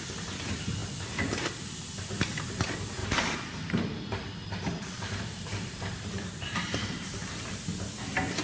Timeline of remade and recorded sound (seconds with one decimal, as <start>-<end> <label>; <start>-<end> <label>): 0.0-3.0 recorded; 3.0-7.3 remade; 7.3-8.4 recorded